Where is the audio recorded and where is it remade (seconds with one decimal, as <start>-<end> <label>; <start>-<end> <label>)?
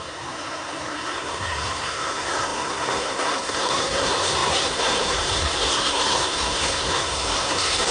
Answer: 0.0-7.9 remade